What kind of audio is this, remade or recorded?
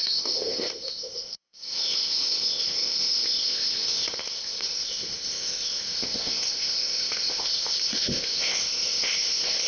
remade